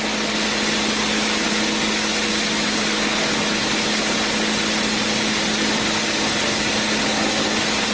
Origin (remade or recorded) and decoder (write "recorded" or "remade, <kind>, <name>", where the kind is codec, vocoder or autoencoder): recorded